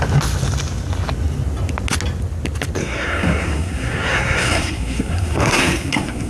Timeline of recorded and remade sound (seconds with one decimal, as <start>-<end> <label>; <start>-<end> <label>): 0.0-2.8 recorded; 2.8-6.3 remade